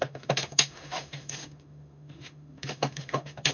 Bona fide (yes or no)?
no